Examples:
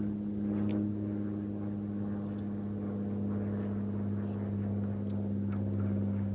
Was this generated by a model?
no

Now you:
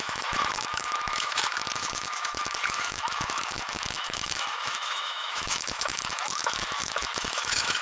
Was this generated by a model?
yes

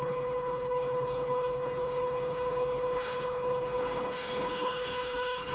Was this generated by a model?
yes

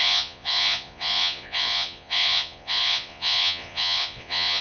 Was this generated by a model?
yes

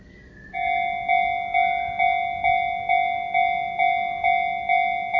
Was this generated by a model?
no